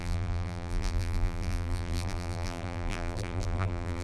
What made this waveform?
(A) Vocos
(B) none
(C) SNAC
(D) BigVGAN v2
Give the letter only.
D